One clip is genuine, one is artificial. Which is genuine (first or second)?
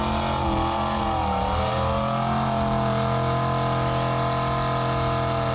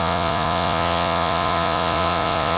first